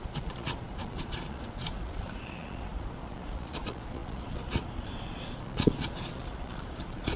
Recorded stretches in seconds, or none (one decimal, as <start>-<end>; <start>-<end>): none